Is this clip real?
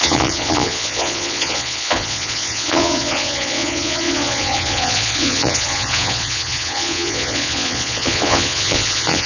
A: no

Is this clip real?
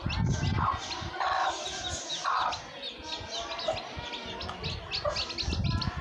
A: yes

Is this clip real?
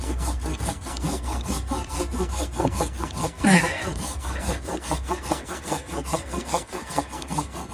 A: no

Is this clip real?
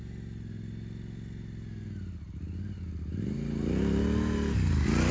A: yes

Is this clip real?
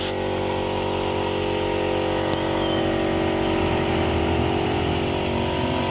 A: yes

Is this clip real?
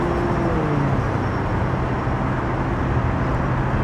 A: yes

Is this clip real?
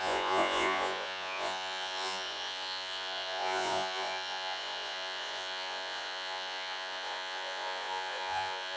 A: no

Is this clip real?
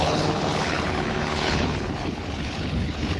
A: no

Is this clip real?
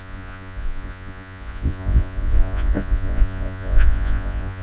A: no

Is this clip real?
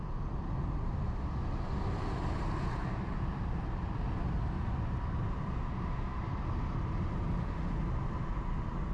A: yes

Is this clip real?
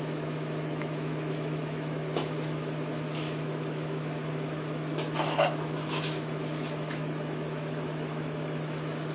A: no